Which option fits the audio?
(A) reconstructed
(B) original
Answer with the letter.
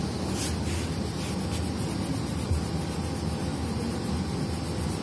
B